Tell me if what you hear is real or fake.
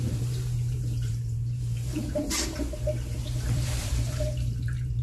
fake